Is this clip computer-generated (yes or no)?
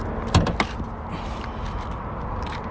no